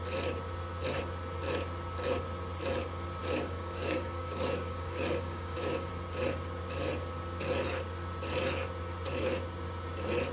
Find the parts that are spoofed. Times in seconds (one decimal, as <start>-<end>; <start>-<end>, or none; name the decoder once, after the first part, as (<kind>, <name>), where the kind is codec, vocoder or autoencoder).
3.2-5.9 (codec, DAC)